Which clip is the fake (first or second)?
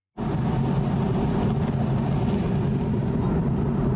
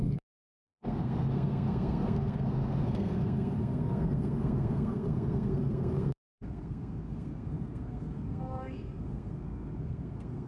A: second